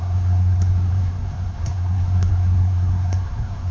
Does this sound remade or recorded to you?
remade